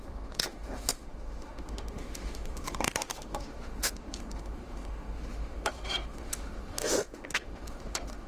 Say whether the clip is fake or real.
fake